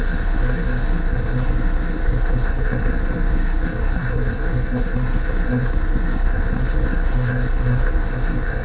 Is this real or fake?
fake